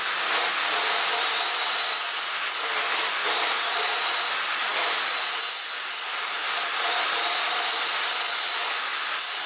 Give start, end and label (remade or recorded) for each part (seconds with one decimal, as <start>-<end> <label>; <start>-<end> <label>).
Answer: 0.0-9.5 recorded